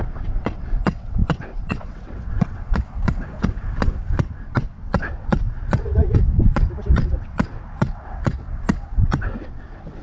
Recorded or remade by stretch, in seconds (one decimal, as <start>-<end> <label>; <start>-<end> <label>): 0.0-10.0 remade